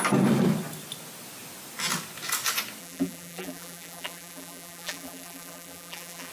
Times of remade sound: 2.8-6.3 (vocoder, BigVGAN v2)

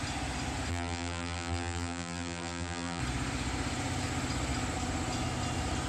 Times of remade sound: 0.7-3.0 (vocoder, BigVGAN v2)

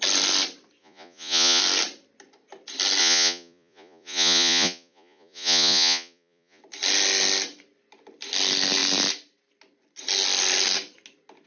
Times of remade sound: 0.8-1.6 (vocoder, Vocos); 3.0-6.6

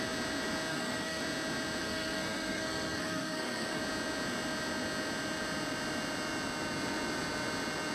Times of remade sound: 0.7-1.2 (codec, SNAC); 1.8-3.8

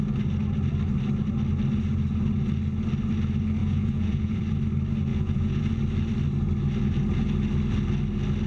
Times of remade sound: 3.6-4.4 (vocoder, Vocos); 5.1-5.7

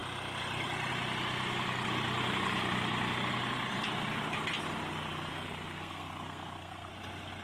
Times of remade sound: 5.3-6.9 (codec, SNAC)